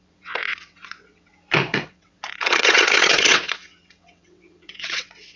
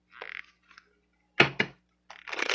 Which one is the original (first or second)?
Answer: second